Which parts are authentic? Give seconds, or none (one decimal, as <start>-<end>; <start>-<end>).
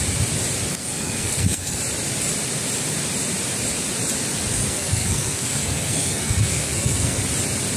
0.0-0.7; 1.8-4.5; 7.2-7.8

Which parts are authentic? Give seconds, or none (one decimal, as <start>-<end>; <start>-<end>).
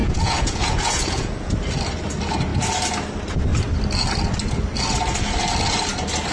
1.5-6.3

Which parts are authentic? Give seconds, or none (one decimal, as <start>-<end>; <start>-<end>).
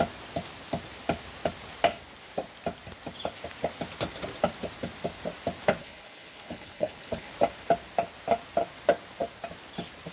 0.0-5.8; 7.3-10.1